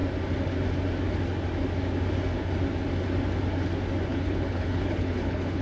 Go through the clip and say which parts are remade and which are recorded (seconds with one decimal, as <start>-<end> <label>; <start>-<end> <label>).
0.0-4.1 recorded; 4.1-5.6 remade